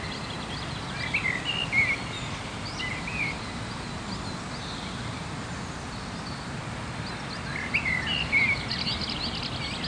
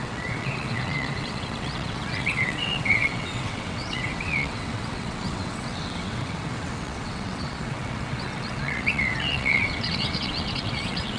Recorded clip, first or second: first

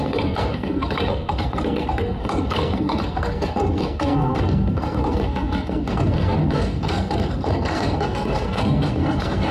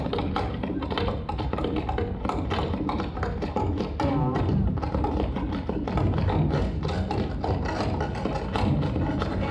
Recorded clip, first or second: second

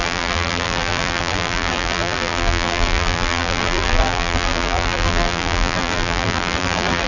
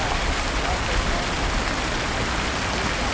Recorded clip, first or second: second